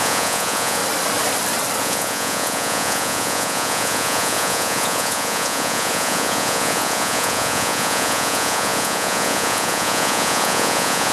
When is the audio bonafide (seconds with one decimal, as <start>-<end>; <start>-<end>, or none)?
0.8-1.8